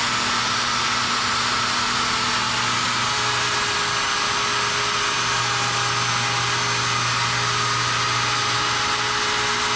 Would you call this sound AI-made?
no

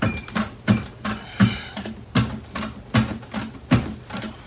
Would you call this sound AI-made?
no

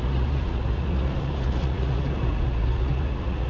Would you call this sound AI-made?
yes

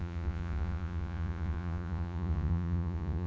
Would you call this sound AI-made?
yes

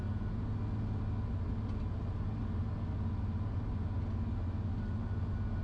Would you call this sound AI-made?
no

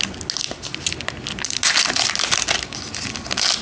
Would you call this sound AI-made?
no